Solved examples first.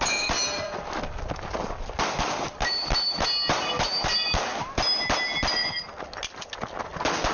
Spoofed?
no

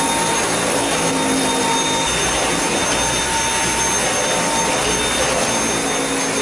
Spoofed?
no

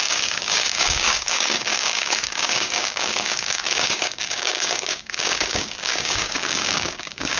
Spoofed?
yes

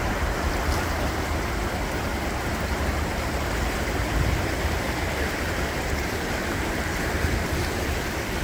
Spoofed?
yes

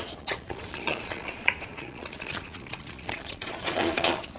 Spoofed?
yes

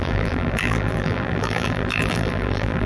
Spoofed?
yes